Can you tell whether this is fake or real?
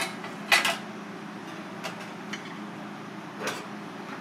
real